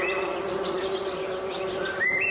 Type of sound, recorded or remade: recorded